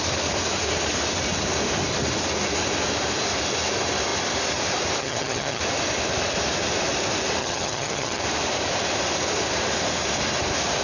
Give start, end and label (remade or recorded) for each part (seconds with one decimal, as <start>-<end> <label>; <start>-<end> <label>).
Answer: 0.0-5.0 recorded; 5.0-5.6 remade; 5.6-7.4 recorded; 7.4-8.2 remade; 8.2-10.8 recorded